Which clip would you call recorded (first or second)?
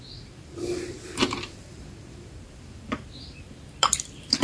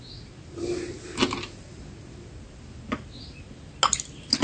second